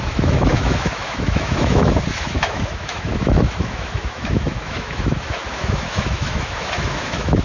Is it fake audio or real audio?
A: fake